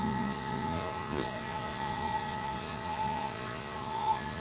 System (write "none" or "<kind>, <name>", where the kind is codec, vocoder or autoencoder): vocoder, Vocos